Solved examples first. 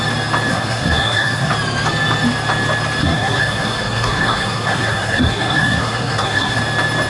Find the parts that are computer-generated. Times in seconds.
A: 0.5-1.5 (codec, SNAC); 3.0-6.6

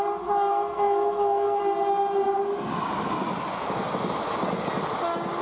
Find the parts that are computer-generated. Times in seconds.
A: 0.5-1.6 (codec, SNAC)

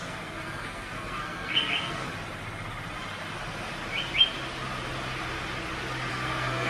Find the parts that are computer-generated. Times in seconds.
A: 0.0-2.1 (codec, SNAC); 6.1-6.7

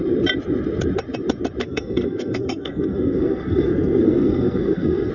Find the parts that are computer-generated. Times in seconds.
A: 1.6-5.1 (codec, SNAC)